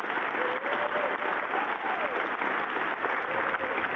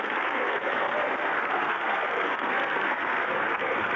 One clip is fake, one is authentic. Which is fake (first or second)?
second